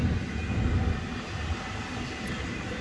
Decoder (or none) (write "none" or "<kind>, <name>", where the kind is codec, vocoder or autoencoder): none